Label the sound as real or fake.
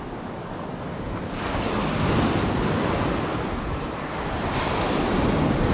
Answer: real